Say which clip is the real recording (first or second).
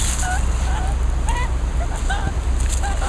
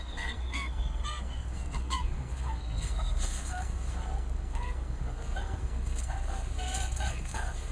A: first